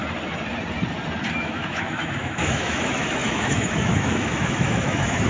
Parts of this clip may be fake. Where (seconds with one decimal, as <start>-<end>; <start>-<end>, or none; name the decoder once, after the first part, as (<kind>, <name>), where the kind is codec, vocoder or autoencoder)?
1.4-5.3 (autoencoder, DAC-VAE)